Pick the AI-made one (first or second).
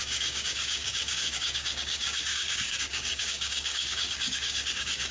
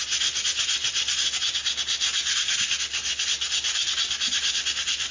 first